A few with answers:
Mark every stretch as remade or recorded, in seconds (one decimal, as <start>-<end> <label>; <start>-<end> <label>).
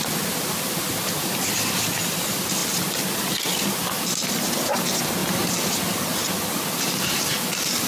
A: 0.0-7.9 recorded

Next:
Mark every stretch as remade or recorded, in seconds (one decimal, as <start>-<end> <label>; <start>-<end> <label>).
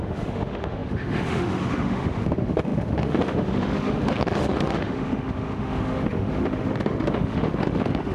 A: 0.0-8.1 remade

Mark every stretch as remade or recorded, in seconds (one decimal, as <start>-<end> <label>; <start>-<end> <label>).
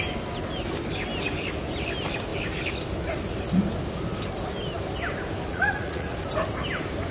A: 0.0-5.5 recorded; 5.5-6.1 remade; 6.1-7.1 recorded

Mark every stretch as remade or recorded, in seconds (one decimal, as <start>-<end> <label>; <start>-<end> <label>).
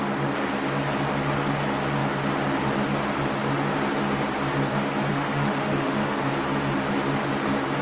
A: 0.0-5.1 recorded; 5.1-6.3 remade; 6.3-7.8 recorded